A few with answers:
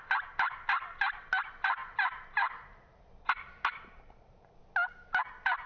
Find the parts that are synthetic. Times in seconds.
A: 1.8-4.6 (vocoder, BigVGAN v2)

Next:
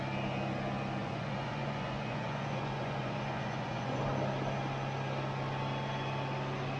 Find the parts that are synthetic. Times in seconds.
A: 1.0-4.0 (vocoder, Vocos)

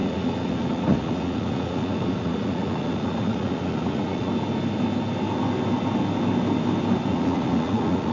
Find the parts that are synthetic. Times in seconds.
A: 0.0-4.3 (vocoder, Vocos); 7.1-8.1

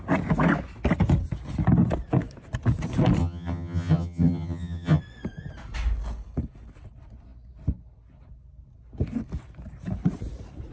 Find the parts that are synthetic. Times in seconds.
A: 3.2-5.0 (vocoder, HiFi-GAN)

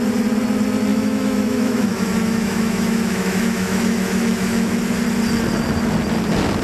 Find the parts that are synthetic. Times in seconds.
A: 0.9-4.8 (autoencoder, DAC-VAE)

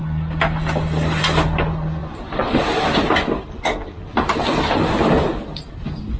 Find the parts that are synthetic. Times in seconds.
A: none

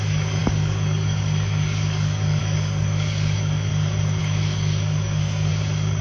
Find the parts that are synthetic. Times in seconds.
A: 0.0-3.7 (codec, DAC); 4.2-5.5

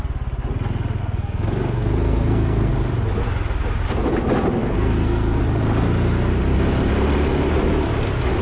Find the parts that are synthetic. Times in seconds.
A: 1.0-2.7 (codec, SNAC); 4.6-5.4